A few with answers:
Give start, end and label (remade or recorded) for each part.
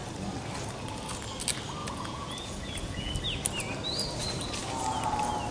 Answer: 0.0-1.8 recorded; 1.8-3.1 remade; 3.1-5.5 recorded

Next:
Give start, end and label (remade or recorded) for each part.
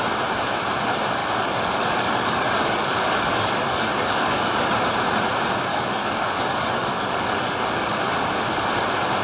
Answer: 0.0-1.2 recorded; 1.2-4.7 remade; 4.7-5.7 recorded; 5.7-8.1 remade; 8.1-9.2 recorded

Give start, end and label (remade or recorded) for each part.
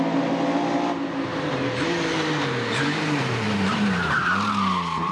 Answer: 0.0-1.3 recorded; 1.3-4.1 remade; 4.1-5.1 recorded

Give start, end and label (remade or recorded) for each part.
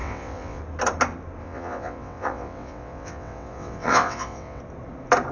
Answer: 0.0-0.6 remade; 0.6-1.4 recorded; 1.4-4.6 remade; 4.6-5.3 recorded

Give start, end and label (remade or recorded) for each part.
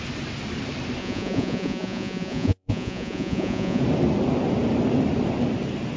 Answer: 0.0-1.0 recorded; 1.0-3.8 remade; 3.8-6.0 recorded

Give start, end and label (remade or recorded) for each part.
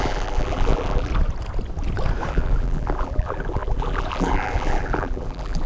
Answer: 0.0-1.1 remade; 1.1-2.3 recorded; 2.3-5.7 remade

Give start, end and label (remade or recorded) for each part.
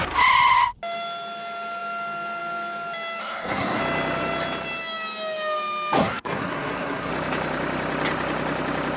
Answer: 0.0-3.2 recorded; 3.2-3.8 remade; 3.8-6.0 recorded; 6.0-7.1 remade; 7.1-9.0 recorded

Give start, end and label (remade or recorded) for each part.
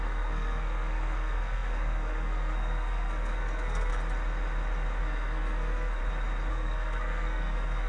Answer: 0.0-3.9 remade; 3.9-5.0 recorded; 5.0-6.0 remade; 6.0-6.5 recorded; 6.5-7.9 remade